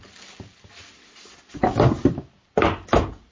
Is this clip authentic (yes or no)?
yes